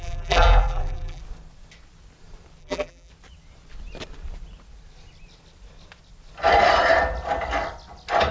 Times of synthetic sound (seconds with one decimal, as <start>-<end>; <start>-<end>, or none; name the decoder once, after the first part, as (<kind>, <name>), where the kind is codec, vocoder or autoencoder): 0.0-1.2 (vocoder, BigVGAN v2); 2.6-3.1